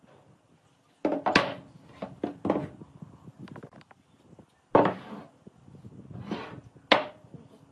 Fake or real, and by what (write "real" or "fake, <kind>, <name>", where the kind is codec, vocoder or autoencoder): real